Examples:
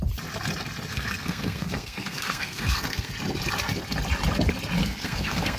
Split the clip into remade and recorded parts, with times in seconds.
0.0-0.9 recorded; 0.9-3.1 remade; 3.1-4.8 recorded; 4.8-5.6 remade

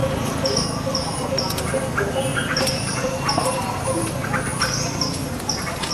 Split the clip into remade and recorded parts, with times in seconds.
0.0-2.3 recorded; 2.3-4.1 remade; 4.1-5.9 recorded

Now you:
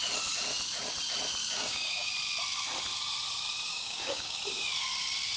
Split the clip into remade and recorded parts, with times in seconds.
0.0-1.4 recorded; 1.4-2.1 remade; 2.1-3.7 recorded; 3.7-4.4 remade; 4.4-5.4 recorded